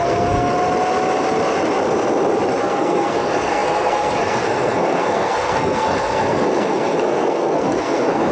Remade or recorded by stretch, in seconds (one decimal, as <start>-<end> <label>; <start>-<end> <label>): 0.0-0.5 remade; 0.5-2.6 recorded; 2.6-8.3 remade